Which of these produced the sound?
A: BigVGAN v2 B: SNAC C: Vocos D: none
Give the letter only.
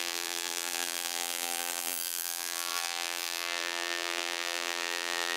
A